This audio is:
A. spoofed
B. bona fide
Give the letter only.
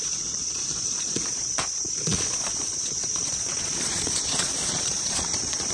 A